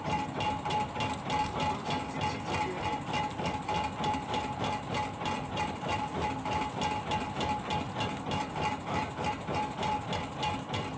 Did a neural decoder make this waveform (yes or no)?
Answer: no